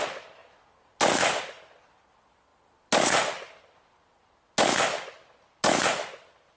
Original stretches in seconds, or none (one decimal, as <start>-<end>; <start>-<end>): 0.0-6.6